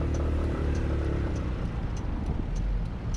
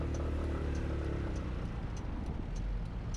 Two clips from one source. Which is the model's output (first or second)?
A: first